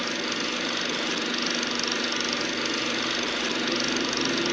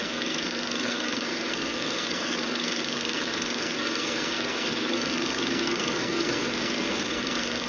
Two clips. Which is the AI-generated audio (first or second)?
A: second